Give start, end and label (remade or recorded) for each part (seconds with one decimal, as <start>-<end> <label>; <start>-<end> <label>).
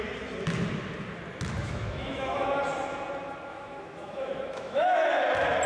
0.0-1.6 recorded; 1.6-2.6 remade; 2.6-3.5 recorded; 3.5-5.2 remade; 5.2-5.7 recorded